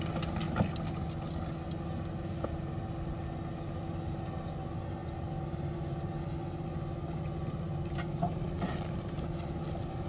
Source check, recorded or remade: recorded